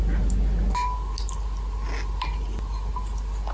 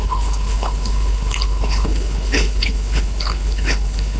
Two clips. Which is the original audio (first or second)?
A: first